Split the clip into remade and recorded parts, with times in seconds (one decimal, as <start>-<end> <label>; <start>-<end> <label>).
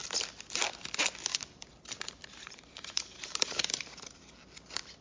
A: 0.0-1.3 recorded; 1.3-4.3 remade; 4.3-5.0 recorded